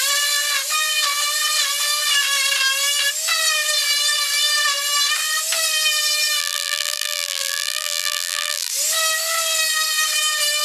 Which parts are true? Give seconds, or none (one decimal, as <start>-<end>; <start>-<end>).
0.0-6.4; 8.7-10.6